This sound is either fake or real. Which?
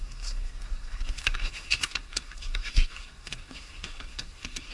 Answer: fake